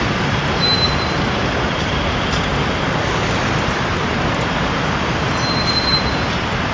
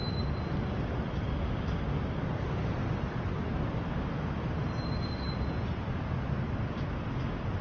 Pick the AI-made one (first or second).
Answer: first